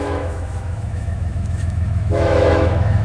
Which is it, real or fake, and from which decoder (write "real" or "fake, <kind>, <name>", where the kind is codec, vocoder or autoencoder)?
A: fake, autoencoder, DAC-VAE